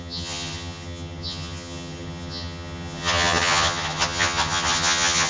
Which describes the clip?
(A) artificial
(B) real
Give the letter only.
A